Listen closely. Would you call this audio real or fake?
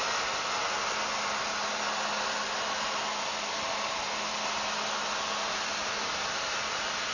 real